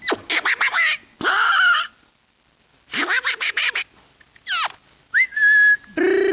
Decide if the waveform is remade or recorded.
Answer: recorded